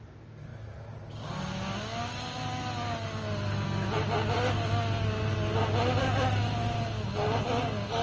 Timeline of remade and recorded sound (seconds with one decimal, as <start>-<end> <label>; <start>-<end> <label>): 0.0-8.0 recorded